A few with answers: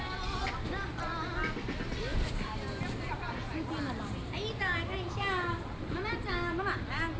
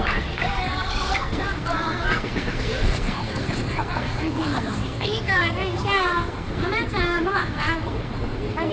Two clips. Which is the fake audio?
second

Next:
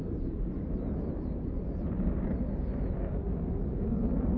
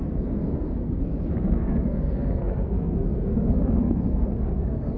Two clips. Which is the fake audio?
second